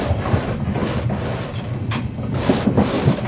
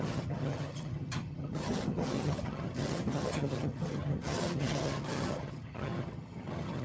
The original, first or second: first